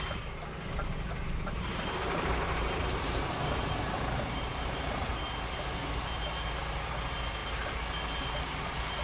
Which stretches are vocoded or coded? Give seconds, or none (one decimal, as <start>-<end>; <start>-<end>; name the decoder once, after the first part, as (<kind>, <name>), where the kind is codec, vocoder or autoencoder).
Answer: 1.2-5.1 (vocoder, BigVGAN v2)